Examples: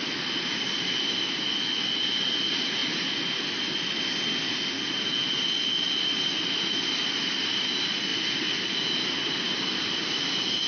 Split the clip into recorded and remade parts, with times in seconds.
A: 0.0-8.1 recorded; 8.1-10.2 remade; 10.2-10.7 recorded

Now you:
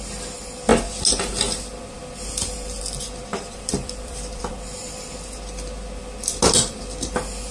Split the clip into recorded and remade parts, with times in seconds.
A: 0.0-3.3 recorded; 3.3-5.0 remade; 5.0-7.5 recorded

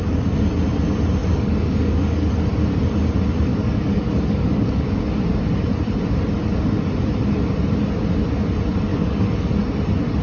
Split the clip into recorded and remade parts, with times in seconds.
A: 0.0-1.2 recorded; 1.2-2.3 remade; 2.3-3.5 recorded; 3.5-5.0 remade; 5.0-8.9 recorded; 8.9-9.5 remade; 9.5-10.2 recorded

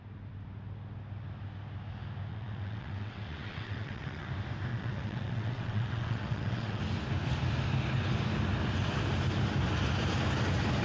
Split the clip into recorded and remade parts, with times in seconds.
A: 0.0-2.3 recorded; 2.3-4.3 remade; 4.3-4.7 recorded; 4.7-6.8 remade; 6.8-10.8 recorded

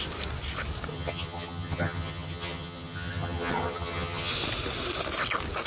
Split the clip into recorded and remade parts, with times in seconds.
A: 0.0-0.9 recorded; 0.9-4.3 remade; 4.3-5.7 recorded

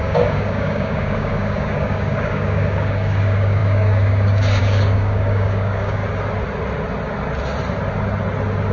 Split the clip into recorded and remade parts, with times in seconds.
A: 0.0-6.0 remade; 6.0-8.7 recorded

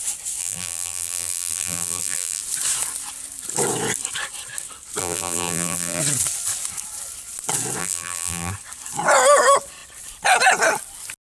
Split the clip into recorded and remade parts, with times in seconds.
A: 0.0-0.4 recorded; 0.4-2.4 remade; 2.4-5.0 recorded; 5.0-6.0 remade; 6.0-7.8 recorded; 7.8-8.5 remade; 8.5-11.2 recorded

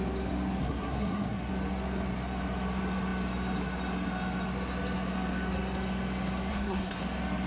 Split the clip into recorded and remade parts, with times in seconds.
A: 0.0-0.6 recorded; 0.6-1.5 remade; 1.5-6.5 recorded; 6.5-7.0 remade; 7.0-7.5 recorded